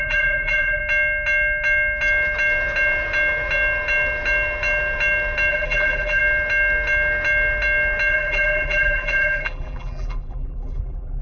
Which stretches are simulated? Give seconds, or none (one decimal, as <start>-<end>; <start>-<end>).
0.0-0.8; 5.5-6.2; 8.1-11.2